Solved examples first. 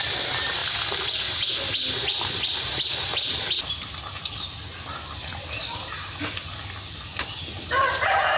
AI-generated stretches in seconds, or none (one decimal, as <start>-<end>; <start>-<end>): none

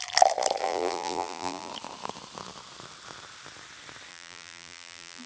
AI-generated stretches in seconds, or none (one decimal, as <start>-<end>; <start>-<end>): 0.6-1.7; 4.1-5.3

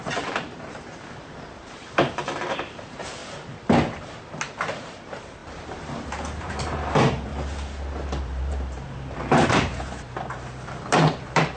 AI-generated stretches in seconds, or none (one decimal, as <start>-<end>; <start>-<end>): 0.0-3.2; 4.4-7.3; 8.2-11.6

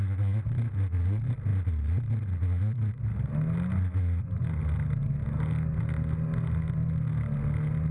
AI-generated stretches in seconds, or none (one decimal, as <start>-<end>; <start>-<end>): none

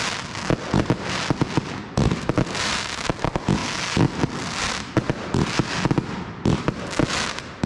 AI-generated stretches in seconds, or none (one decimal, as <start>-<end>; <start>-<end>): none

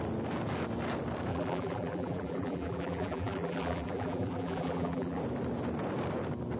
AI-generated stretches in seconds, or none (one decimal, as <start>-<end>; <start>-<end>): 1.3-5.2

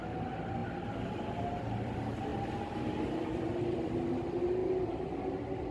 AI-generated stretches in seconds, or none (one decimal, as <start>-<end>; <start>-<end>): 2.3-3.9; 4.6-5.7